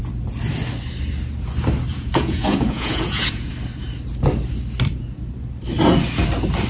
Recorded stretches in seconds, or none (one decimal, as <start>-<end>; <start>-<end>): 0.0-1.9; 3.5-6.7